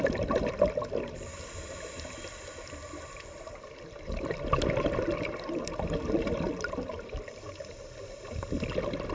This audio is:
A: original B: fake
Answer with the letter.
A